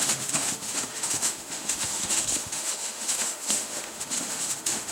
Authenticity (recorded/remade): remade